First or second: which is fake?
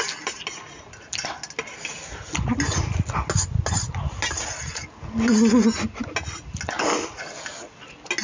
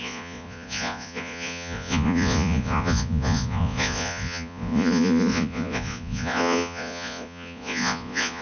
second